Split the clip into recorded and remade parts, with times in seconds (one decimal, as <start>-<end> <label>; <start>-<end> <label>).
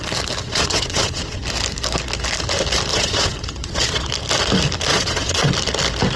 0.0-0.4 recorded; 0.4-1.4 remade; 1.4-2.9 recorded; 2.9-4.1 remade; 4.1-4.9 recorded; 4.9-5.5 remade; 5.5-6.2 recorded